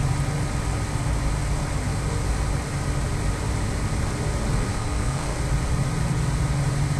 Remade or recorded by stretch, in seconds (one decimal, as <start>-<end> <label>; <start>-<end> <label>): 0.0-4.5 recorded; 4.5-5.4 remade; 5.4-7.0 recorded